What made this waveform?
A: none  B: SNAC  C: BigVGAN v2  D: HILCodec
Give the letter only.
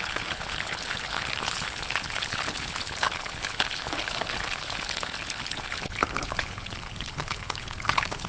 D